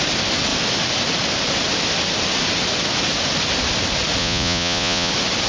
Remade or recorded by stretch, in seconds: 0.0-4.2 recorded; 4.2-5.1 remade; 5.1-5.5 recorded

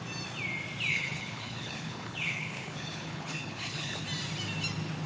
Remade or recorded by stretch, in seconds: 0.0-0.9 recorded; 0.9-4.0 remade; 4.0-5.1 recorded

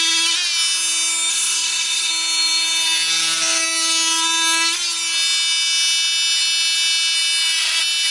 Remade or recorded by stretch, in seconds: 0.0-1.3 recorded; 1.3-2.1 remade; 2.1-8.1 recorded

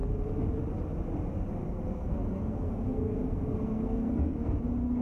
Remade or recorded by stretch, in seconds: 0.0-1.6 recorded; 1.6-4.6 remade; 4.6-5.0 recorded